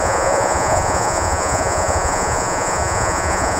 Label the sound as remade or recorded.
remade